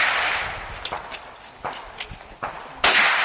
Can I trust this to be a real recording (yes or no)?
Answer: yes